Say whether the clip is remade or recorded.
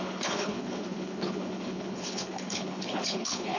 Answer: remade